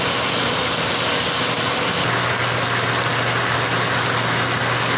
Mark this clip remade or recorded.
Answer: recorded